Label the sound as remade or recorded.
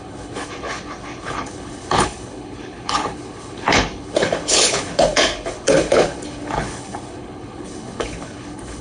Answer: remade